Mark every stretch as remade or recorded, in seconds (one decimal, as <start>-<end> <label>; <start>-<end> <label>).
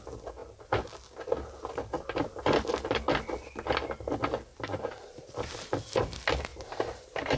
0.0-4.5 recorded; 4.5-5.5 remade; 5.5-6.5 recorded; 6.5-7.4 remade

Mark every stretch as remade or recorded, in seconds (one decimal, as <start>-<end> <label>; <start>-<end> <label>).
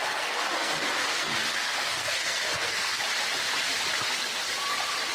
0.0-3.0 remade; 3.0-5.1 recorded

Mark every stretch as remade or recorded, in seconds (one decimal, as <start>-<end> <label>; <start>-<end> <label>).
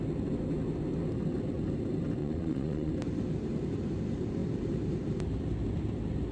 0.0-2.2 recorded; 2.2-2.9 remade; 2.9-6.3 recorded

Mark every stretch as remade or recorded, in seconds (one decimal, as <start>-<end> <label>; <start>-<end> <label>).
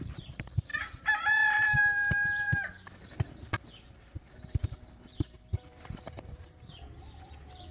0.0-7.7 remade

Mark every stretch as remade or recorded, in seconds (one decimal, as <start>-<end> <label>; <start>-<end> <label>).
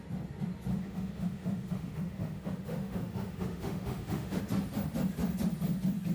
0.0-0.7 recorded; 0.7-4.4 remade; 4.4-6.1 recorded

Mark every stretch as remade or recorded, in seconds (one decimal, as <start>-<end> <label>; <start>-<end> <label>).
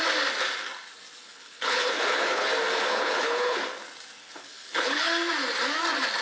0.0-1.2 recorded; 1.2-2.5 remade; 2.5-2.9 recorded; 2.9-3.6 remade; 3.6-4.2 recorded; 4.2-5.1 remade; 5.1-6.2 recorded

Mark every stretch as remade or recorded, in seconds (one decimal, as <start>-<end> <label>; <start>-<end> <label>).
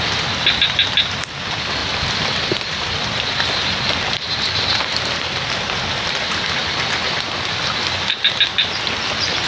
0.0-1.8 recorded; 1.8-4.3 remade; 4.3-9.5 recorded